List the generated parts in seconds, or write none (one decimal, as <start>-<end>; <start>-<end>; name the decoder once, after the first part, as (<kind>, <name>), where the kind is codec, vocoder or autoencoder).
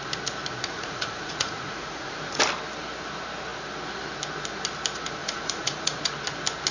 0.7-2.4 (vocoder, Vocos); 5.2-6.0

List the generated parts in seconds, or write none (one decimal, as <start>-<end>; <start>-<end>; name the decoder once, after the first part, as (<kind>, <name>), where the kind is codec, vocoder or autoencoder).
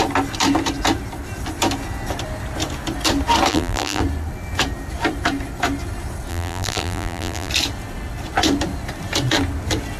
3.5-4.0 (vocoder, BigVGAN v2); 6.3-7.5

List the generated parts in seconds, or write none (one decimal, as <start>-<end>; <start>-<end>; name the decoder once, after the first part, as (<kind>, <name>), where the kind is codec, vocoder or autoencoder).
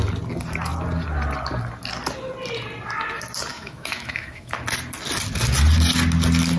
3.5-4.5 (autoencoder, DAC-VAE)